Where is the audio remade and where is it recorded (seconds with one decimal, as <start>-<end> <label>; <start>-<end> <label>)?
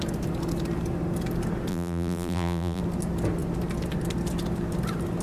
0.0-1.7 recorded; 1.7-2.8 remade; 2.8-5.2 recorded